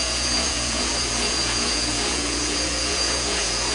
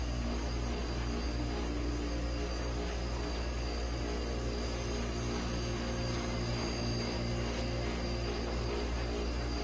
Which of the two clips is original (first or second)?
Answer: second